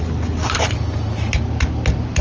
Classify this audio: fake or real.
real